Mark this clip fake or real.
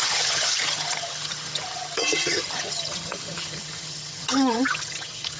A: fake